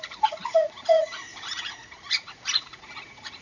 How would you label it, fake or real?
fake